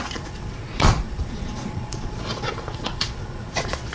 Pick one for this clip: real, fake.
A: fake